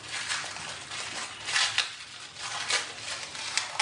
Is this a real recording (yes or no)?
yes